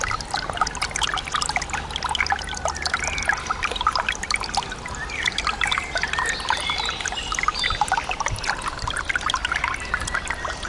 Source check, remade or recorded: recorded